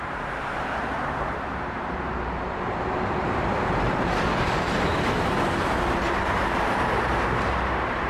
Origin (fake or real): fake